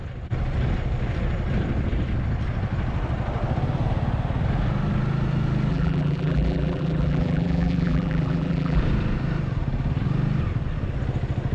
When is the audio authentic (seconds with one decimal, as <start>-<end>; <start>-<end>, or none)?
0.0-5.7; 8.8-11.5